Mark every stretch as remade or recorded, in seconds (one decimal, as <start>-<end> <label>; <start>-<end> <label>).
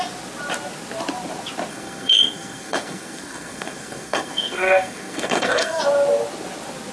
0.0-1.7 recorded; 1.7-5.8 remade; 5.8-6.9 recorded